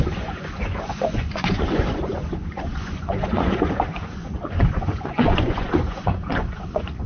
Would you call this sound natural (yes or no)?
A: no